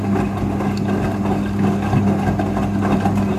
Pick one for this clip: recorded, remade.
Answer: recorded